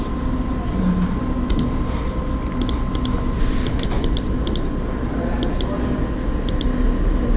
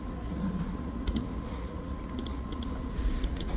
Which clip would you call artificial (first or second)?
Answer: second